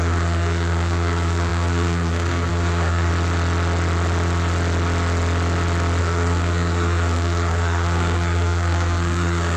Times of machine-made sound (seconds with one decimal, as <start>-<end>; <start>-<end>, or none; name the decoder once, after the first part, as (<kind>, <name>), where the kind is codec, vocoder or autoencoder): 0.0-3.1 (codec, SNAC); 6.0-9.6